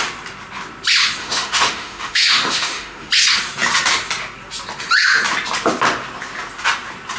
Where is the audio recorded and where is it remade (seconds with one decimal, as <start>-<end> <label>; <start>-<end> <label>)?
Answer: 0.0-1.2 recorded; 1.2-3.1 remade; 3.1-7.2 recorded